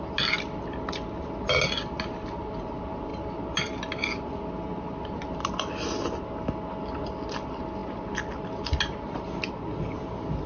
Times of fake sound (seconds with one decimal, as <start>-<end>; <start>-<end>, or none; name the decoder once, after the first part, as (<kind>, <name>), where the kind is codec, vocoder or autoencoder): none